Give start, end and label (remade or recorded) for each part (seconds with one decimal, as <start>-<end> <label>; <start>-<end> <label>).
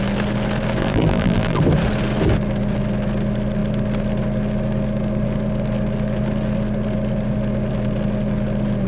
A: 0.0-0.8 recorded; 0.8-1.6 remade; 1.6-8.9 recorded